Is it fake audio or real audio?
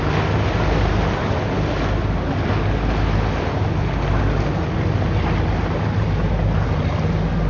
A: real